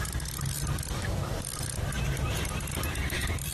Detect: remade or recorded remade